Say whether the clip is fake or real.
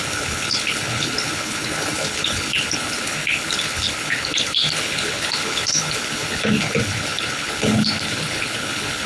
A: fake